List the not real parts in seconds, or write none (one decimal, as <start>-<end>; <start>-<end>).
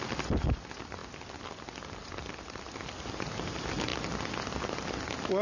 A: none